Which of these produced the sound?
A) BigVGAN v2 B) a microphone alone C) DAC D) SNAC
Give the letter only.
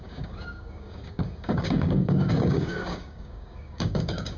C